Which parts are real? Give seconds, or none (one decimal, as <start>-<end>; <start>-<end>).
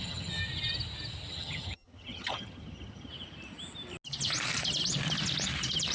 0.4-1.3; 3.1-5.9